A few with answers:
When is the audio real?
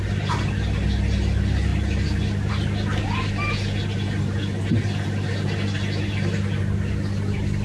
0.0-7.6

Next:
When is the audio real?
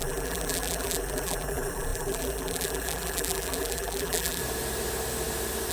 4.4-5.7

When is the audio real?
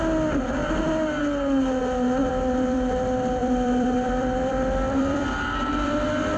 0.0-2.2; 2.9-3.4; 5.9-6.4